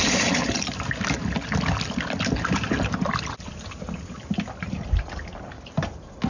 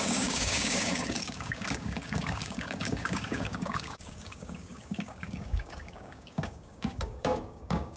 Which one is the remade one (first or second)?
second